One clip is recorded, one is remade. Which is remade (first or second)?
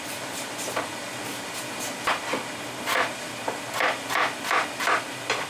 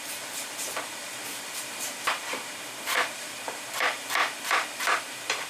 second